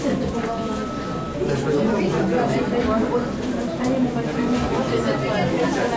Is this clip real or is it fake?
real